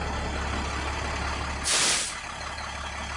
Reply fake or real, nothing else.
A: real